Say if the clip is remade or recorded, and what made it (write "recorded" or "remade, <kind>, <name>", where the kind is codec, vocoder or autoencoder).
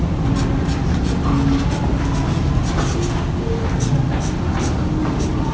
recorded